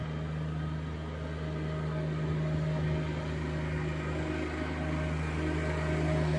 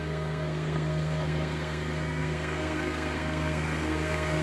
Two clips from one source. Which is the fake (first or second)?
second